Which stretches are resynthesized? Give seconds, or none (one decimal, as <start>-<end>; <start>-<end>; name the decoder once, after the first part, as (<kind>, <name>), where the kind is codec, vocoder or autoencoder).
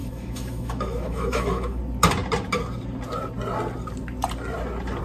0.0-1.8 (autoencoder, DAC-VAE)